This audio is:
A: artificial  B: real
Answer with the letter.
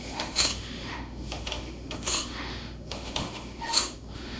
A